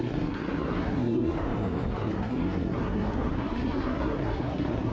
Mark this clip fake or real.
fake